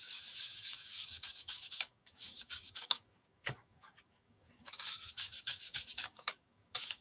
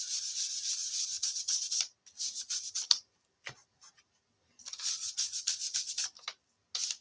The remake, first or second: first